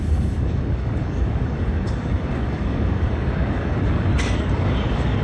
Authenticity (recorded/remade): remade